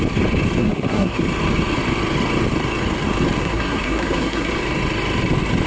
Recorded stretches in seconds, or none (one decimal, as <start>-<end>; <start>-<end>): 0.0-0.6; 1.2-3.4; 4.5-5.7